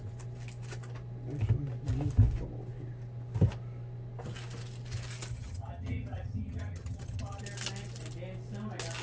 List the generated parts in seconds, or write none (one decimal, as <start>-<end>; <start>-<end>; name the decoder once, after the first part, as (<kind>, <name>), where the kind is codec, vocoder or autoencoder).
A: 5.3-7.4 (vocoder, HiFi-GAN)